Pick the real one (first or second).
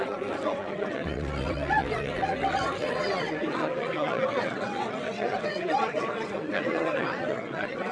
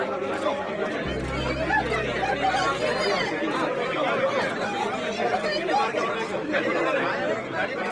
second